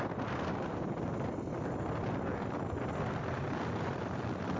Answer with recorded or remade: recorded